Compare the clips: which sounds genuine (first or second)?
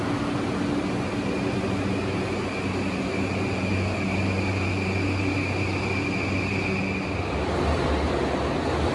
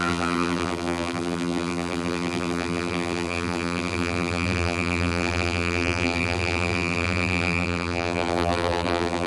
first